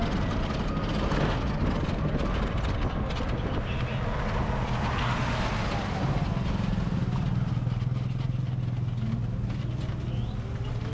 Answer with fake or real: real